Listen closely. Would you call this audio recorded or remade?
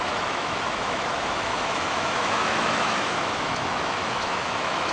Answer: remade